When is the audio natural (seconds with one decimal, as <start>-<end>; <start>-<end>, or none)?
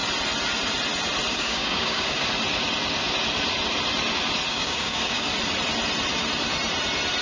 0.0-1.3; 2.2-4.5; 5.3-7.2